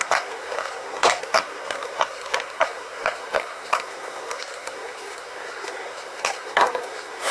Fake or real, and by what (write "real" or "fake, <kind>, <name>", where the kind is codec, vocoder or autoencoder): fake, codec, SNAC